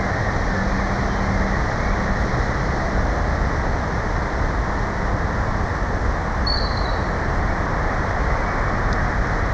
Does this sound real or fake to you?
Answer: real